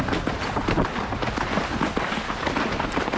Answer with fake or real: real